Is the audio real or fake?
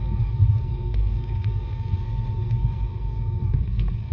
fake